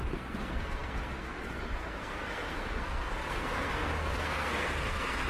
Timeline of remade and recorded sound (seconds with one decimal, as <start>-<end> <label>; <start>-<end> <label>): 0.0-5.3 remade